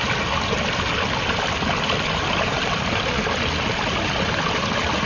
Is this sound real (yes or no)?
yes